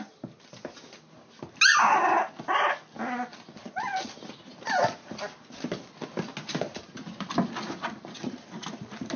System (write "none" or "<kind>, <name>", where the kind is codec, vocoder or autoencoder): none